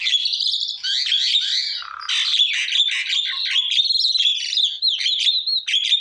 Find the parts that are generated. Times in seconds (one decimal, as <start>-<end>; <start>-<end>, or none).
none